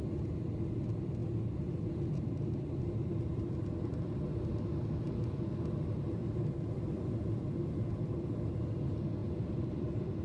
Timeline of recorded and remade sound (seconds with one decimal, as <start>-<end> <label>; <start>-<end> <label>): 0.0-1.2 recorded; 1.2-4.2 remade; 4.2-6.2 recorded; 6.2-8.3 remade; 8.3-9.2 recorded; 9.2-10.2 remade